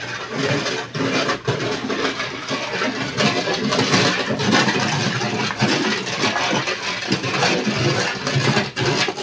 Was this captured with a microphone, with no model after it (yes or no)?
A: yes